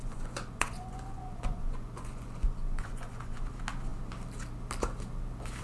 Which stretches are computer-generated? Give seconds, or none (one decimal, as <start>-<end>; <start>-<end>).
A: 0.0-3.4